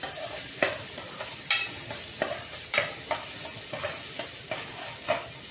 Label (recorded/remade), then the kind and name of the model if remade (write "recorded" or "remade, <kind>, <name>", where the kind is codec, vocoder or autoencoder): recorded